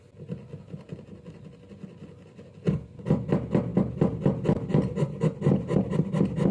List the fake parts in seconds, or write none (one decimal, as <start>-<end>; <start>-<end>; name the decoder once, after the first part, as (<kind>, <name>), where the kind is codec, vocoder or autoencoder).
none